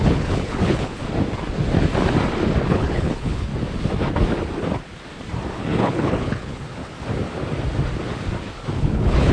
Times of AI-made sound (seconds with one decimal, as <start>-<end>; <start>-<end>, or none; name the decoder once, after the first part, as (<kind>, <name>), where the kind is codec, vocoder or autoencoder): 0.0-1.0 (codec, HILCodec); 2.7-3.5; 5.5-6.8; 8.8-9.3